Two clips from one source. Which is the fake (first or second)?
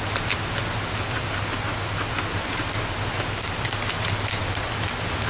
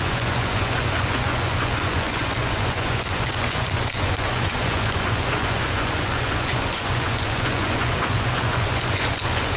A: second